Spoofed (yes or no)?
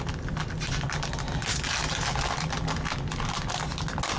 no